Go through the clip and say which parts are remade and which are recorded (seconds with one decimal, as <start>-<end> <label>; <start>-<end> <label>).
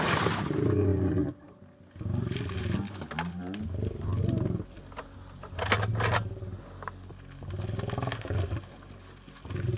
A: 0.0-9.8 recorded